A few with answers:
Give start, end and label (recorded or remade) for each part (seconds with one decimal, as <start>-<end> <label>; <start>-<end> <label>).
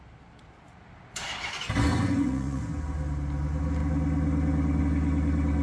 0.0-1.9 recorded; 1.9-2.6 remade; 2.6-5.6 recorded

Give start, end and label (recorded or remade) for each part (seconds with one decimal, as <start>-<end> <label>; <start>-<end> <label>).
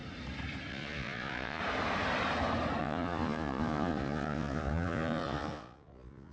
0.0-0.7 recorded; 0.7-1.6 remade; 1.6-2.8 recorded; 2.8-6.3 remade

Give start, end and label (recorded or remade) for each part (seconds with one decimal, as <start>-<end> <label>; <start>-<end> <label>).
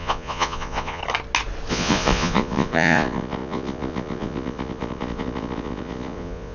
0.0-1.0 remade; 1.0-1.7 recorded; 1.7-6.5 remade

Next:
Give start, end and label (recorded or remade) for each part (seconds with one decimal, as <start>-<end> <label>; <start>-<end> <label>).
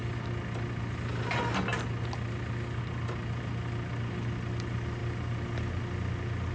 0.0-6.5 recorded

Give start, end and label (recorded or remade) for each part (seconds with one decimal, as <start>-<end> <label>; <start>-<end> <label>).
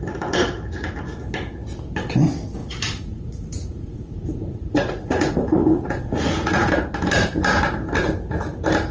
0.0-2.6 recorded; 2.6-6.7 remade; 6.7-8.9 recorded